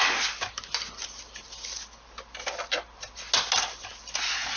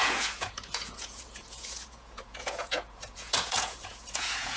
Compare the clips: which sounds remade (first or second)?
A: second